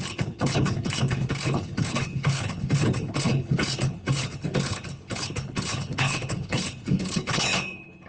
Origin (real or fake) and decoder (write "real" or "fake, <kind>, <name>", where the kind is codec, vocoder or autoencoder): fake, codec, HILCodec